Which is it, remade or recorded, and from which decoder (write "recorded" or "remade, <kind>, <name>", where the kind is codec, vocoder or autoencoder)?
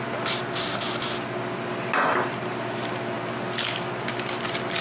recorded